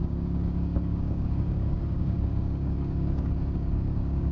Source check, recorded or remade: remade